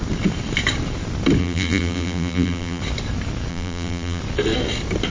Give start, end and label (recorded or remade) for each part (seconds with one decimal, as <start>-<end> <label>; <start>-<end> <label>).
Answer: 0.0-1.4 recorded; 1.4-2.8 remade; 2.8-3.5 recorded; 3.5-4.2 remade; 4.2-5.1 recorded